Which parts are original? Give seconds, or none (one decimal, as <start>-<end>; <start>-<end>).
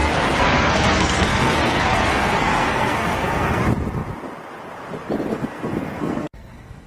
3.6-5.3